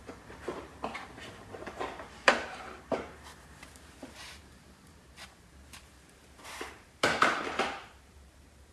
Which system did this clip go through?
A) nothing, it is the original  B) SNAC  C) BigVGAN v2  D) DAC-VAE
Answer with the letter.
C